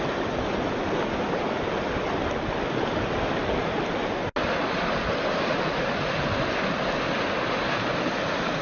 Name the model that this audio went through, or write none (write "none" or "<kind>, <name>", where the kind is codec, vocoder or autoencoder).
none